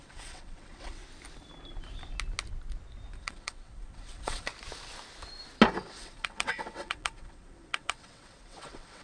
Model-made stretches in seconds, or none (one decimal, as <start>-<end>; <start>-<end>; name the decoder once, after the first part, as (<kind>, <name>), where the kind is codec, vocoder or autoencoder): 0.0-1.0 (vocoder, WaveNeXt); 3.2-4.5; 5.8-9.0